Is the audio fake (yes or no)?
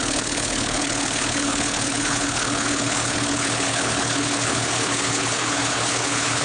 yes